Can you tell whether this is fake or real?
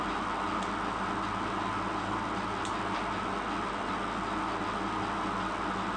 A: real